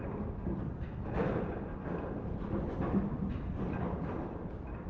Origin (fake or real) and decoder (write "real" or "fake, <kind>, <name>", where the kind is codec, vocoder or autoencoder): real